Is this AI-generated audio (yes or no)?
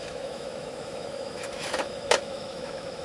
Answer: yes